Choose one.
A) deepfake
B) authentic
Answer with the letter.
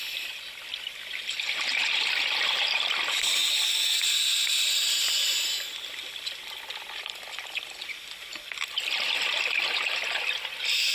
B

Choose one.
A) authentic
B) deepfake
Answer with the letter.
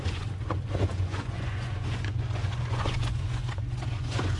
B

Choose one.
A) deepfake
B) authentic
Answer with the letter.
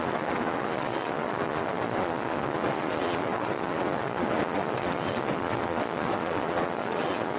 A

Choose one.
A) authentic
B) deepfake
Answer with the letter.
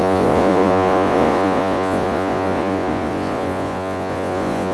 B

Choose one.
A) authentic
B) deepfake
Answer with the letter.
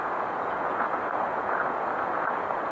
B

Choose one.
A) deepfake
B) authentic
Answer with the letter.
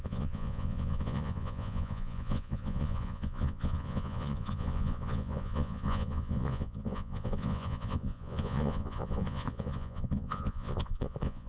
A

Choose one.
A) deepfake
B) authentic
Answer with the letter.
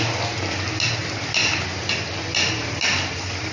B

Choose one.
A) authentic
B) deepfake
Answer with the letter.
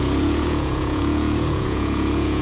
B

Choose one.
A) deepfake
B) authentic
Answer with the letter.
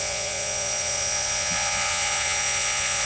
A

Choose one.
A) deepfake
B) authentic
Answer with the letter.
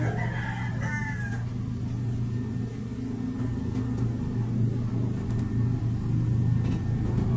B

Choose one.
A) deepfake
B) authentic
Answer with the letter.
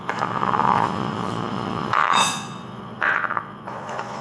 A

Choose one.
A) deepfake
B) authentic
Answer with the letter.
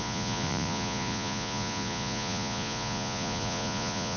A